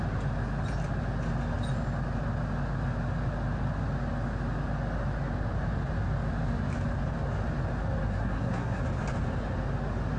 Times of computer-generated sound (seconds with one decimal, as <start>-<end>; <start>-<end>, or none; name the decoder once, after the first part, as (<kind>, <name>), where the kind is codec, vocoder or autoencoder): 8.1-8.8 (codec, SNAC)